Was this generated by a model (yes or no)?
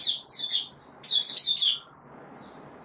no